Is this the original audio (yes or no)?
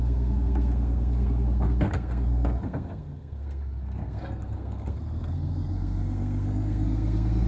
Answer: no